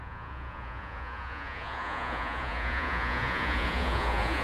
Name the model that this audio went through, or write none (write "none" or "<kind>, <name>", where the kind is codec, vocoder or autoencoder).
vocoder, Vocos